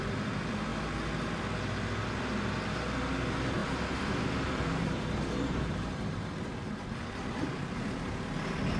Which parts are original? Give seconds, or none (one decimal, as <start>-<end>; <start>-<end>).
0.0-3.6; 8.1-8.8